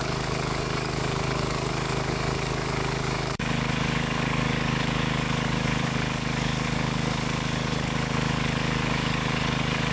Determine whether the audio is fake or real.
fake